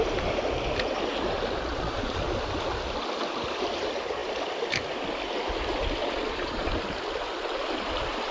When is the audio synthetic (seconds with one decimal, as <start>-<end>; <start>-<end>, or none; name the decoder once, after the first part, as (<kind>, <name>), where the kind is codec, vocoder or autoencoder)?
1.7-2.2 (vocoder, Vocos); 6.0-6.7